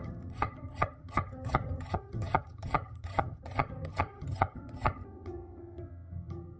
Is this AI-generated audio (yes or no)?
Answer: yes